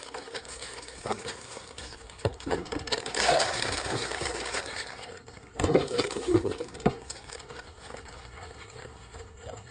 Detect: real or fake fake